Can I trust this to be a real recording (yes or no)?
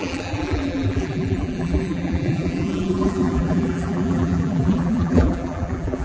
no